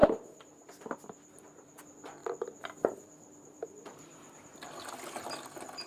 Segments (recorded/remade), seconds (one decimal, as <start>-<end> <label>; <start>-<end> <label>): 0.0-1.8 remade; 1.8-2.2 recorded; 2.2-4.5 remade; 4.5-5.9 recorded